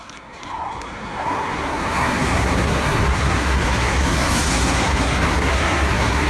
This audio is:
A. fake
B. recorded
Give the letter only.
A